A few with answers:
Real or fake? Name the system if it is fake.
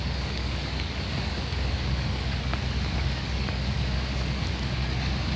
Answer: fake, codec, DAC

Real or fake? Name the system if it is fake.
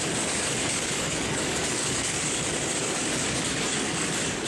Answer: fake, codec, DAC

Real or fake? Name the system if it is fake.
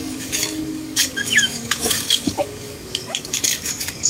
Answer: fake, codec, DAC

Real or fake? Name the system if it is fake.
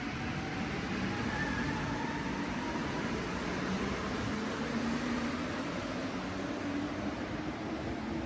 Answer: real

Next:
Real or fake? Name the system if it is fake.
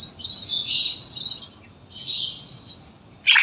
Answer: real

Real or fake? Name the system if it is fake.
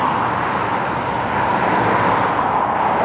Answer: real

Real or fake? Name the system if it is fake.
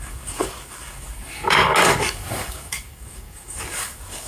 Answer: fake, codec, DAC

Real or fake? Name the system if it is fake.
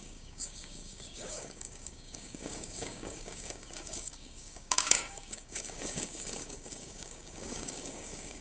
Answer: fake, codec, DAC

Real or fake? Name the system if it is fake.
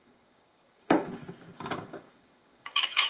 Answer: fake, codec, DAC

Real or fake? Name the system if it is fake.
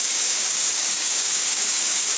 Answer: fake, codec, DAC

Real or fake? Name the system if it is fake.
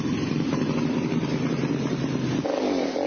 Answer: real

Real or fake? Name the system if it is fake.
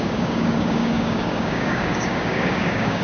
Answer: fake, codec, DAC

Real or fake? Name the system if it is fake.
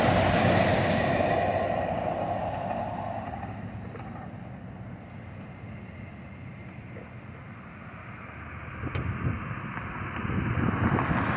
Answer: real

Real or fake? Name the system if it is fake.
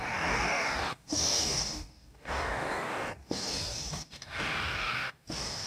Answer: fake, codec, DAC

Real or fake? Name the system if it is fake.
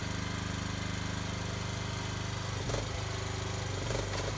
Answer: real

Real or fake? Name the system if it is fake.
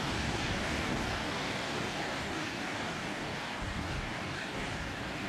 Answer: fake, codec, DAC